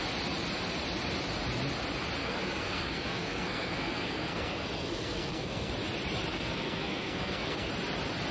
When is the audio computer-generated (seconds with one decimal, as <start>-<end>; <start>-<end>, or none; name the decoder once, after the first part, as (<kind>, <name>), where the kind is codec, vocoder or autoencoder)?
2.2-5.7 (codec, SNAC); 6.3-7.7